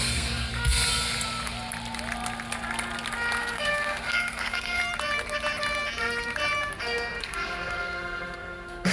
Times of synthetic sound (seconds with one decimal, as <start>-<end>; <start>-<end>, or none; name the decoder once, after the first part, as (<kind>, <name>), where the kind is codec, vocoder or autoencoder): 0.0-0.5 (codec, SNAC); 3.4-4.8; 6.8-8.9